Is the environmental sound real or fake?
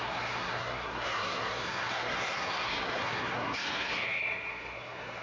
fake